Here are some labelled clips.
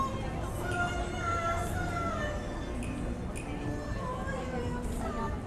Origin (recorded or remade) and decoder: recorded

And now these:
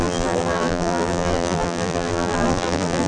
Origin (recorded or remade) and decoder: remade, vocoder, BigVGAN v2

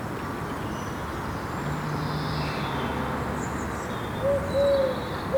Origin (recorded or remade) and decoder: recorded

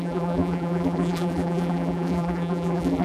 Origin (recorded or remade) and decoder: remade, vocoder, BigVGAN v2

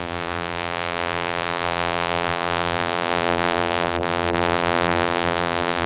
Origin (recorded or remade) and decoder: remade, vocoder, BigVGAN v2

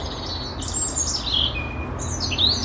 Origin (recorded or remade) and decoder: recorded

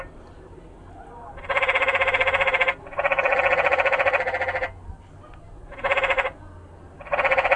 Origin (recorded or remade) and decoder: recorded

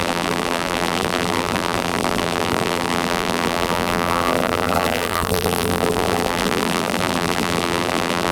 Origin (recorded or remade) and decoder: remade, vocoder, BigVGAN v2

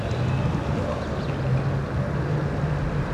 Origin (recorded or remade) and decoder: recorded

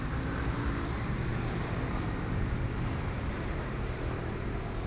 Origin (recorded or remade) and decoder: remade, vocoder, BigVGAN v2